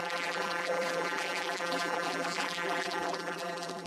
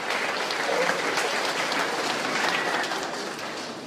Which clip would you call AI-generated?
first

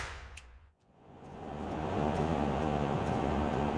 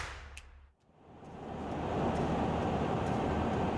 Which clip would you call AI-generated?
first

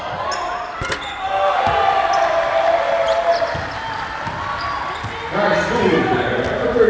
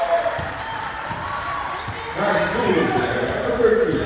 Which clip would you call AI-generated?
second